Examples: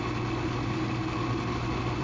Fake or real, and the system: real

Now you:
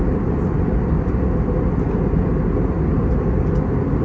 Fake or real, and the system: real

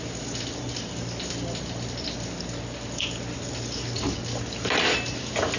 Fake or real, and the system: real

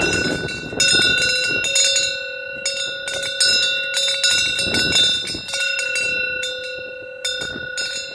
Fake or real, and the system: real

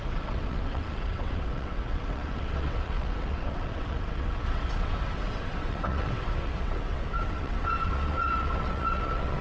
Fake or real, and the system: fake, vocoder, WaveNeXt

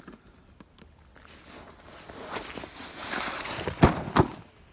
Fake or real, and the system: real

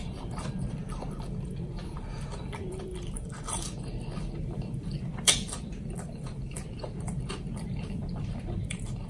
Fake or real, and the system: fake, vocoder, BigVGAN v2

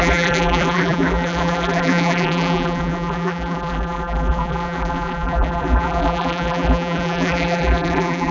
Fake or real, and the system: fake, vocoder, BigVGAN v2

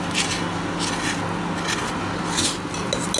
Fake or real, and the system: real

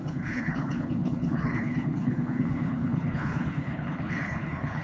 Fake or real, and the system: fake, codec, HILCodec